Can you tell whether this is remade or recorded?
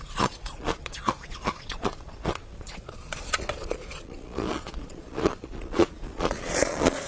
remade